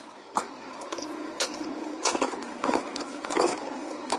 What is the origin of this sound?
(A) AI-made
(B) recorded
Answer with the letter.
A